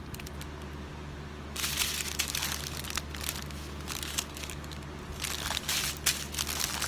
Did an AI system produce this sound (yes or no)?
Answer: no